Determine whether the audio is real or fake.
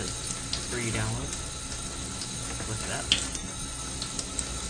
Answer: real